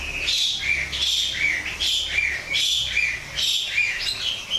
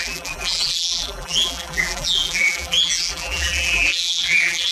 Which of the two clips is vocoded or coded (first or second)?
second